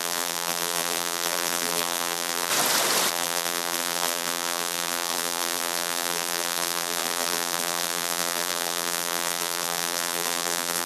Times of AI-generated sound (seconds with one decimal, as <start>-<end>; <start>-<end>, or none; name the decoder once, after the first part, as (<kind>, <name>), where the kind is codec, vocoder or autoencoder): 0.0-2.5 (vocoder, BigVGAN v2); 3.1-10.9